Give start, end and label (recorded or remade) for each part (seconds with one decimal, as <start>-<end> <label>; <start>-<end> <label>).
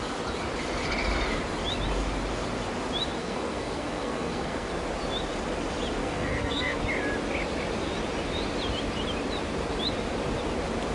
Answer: 0.0-3.2 recorded; 3.2-4.7 remade; 4.7-6.0 recorded; 6.0-6.8 remade; 6.8-10.9 recorded